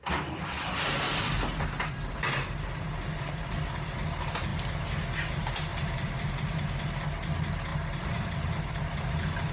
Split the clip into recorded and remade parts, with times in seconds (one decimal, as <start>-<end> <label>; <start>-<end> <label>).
0.0-5.7 recorded; 5.7-6.3 remade; 6.3-7.7 recorded; 7.7-8.3 remade; 8.3-9.5 recorded